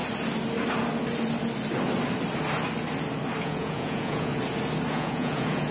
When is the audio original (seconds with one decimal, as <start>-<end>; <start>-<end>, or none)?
0.0-3.4; 4.3-4.9